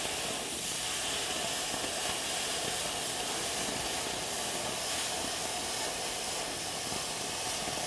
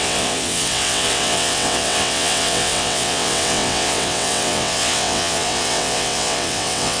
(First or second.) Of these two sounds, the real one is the first